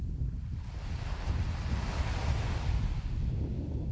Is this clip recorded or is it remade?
recorded